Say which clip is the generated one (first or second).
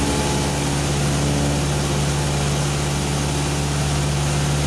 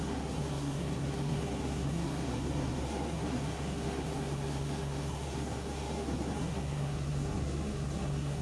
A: second